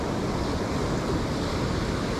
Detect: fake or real real